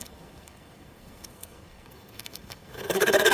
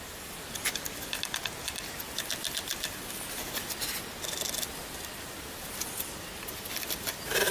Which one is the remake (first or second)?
first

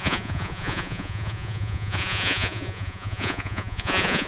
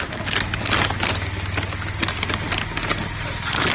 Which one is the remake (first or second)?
first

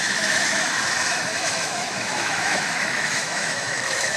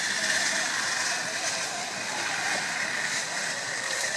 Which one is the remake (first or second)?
first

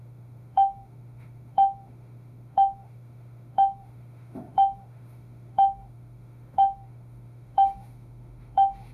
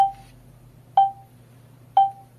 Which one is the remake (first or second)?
first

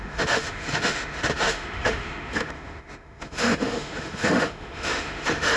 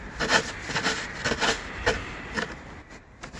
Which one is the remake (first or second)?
first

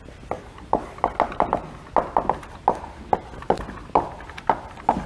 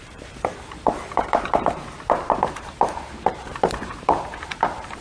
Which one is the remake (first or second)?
second